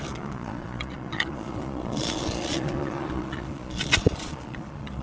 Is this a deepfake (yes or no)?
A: yes